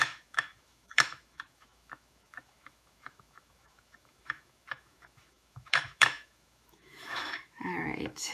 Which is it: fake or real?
fake